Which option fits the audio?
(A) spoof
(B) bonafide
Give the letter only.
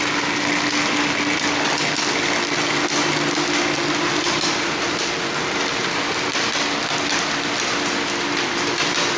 B